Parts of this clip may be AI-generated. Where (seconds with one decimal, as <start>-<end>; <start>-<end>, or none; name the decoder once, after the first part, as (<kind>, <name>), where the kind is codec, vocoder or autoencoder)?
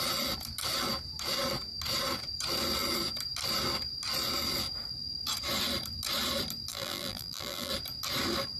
6.7-7.7 (vocoder, BigVGAN v2)